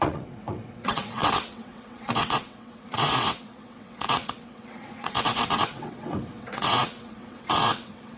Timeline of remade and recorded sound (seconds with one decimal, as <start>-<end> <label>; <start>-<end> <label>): 0.0-8.2 remade